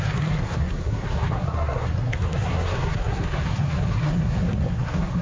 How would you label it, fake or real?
fake